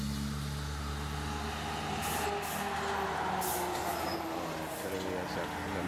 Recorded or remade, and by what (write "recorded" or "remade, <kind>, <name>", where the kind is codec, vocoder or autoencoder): recorded